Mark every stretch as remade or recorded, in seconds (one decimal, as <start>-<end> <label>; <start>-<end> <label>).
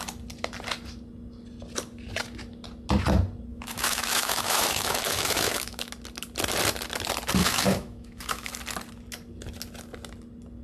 0.0-3.5 recorded; 3.5-5.9 remade; 5.9-7.4 recorded; 7.4-8.5 remade; 8.5-10.6 recorded